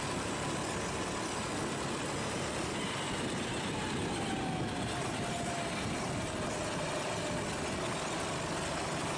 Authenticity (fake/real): real